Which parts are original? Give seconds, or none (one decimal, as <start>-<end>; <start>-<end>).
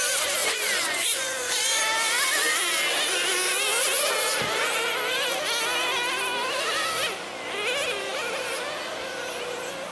0.0-0.4; 1.8-9.9